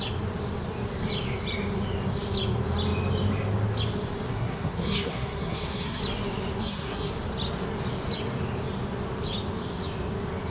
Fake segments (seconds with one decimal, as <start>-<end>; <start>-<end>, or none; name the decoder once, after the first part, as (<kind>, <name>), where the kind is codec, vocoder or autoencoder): 4.3-6.0 (codec, SNAC); 6.6-7.1